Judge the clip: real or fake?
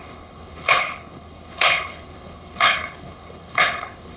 fake